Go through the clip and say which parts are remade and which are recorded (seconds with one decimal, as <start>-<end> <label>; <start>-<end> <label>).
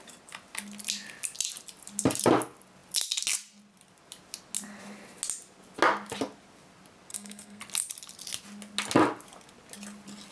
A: 0.0-7.1 recorded; 7.1-7.6 remade; 7.6-10.3 recorded